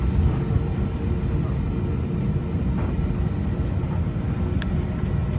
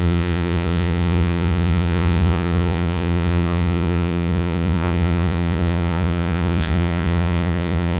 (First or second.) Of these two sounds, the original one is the first